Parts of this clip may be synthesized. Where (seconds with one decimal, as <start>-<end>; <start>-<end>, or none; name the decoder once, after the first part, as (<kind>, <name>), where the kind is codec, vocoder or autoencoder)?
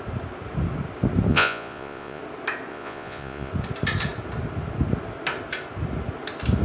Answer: 1.3-2.2 (vocoder, Vocos); 2.7-3.5